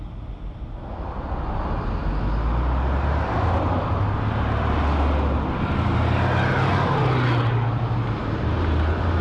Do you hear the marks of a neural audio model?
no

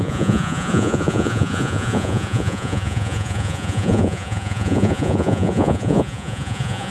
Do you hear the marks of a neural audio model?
yes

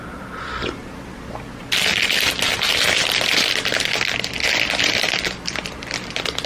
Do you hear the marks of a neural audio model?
no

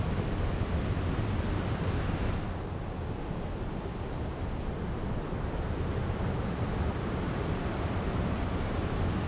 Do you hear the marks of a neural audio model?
no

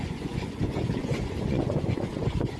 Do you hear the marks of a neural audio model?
yes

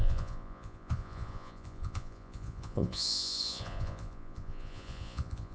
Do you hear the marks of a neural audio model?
yes